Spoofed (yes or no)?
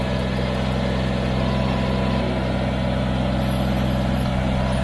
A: no